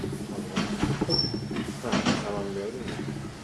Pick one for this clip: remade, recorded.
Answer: recorded